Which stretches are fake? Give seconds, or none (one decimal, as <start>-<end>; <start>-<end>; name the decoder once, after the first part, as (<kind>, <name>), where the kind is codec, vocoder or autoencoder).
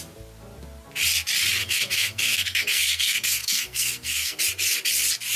1.6-4.4 (codec, SNAC)